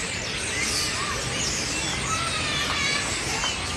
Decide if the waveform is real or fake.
real